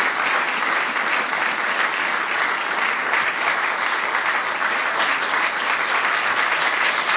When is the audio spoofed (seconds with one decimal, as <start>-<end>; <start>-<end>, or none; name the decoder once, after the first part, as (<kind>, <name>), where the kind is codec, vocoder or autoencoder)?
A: none